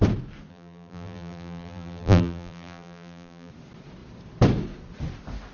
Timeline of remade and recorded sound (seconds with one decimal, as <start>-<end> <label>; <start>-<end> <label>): 0.0-0.5 recorded; 0.5-3.5 remade; 3.5-5.5 recorded